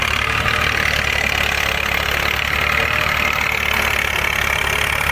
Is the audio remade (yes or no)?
no